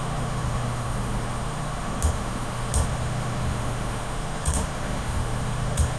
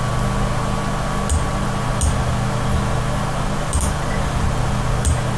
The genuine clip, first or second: second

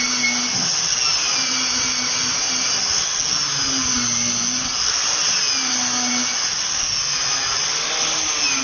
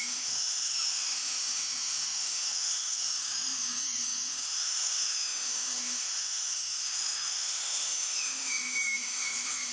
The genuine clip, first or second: first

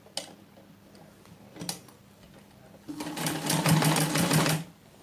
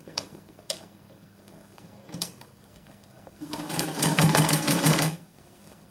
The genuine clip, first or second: first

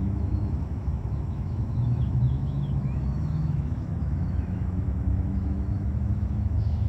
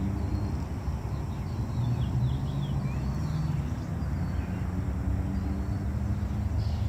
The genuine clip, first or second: second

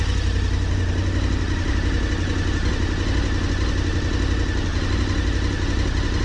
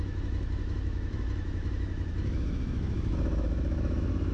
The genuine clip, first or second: first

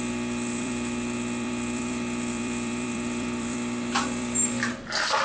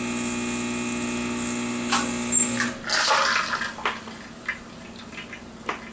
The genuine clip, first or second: second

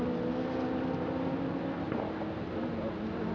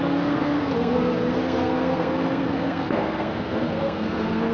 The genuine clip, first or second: first